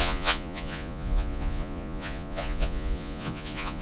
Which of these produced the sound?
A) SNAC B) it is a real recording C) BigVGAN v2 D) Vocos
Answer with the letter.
D